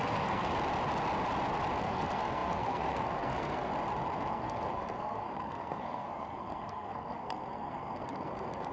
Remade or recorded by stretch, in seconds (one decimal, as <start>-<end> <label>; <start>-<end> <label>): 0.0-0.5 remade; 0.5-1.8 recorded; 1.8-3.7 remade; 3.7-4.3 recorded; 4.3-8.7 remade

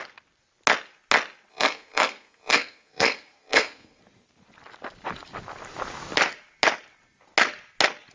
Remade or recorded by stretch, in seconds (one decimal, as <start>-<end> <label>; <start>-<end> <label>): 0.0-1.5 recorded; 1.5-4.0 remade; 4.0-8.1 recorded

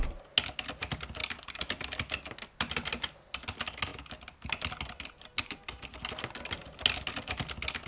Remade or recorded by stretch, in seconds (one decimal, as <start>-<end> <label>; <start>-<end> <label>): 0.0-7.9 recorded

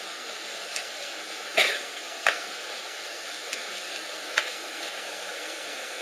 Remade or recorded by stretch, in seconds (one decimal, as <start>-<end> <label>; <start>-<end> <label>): 0.0-6.0 remade

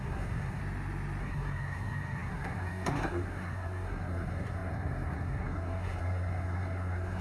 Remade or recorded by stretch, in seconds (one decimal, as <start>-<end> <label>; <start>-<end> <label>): 0.0-0.6 remade; 0.6-1.2 recorded; 1.2-7.2 remade

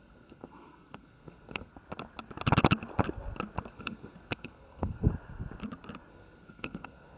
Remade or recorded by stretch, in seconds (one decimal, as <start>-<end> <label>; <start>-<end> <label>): 0.0-1.7 remade; 1.7-3.7 recorded; 3.7-5.1 remade; 5.1-6.1 recorded; 6.1-7.2 remade